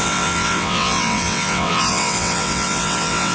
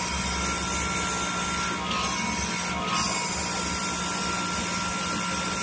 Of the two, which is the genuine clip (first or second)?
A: second